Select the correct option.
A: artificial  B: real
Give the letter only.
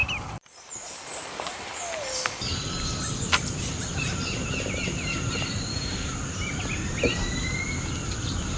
A